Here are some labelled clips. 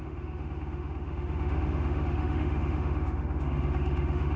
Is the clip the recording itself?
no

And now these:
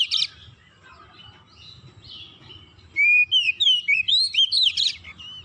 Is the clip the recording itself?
yes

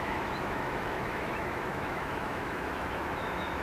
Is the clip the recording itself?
no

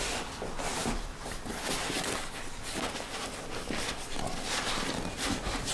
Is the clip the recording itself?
yes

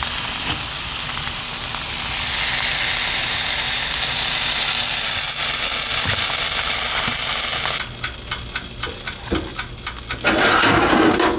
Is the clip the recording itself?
yes